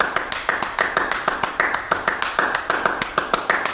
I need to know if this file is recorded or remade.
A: recorded